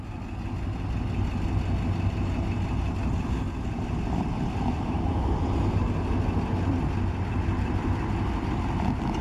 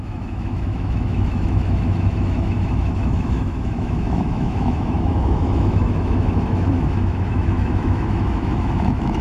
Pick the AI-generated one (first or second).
second